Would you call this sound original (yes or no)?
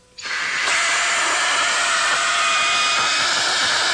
yes